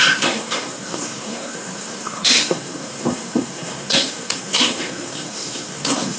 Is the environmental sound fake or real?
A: fake